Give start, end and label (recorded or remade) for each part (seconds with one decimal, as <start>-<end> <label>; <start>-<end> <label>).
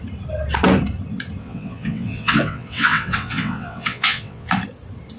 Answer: 0.0-1.4 recorded; 1.4-4.5 remade; 4.5-5.2 recorded